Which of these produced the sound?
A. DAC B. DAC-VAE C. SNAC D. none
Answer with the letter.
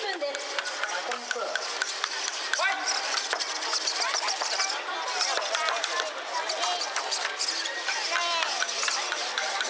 D